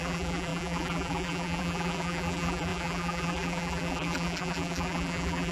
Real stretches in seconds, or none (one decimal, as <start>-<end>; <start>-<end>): none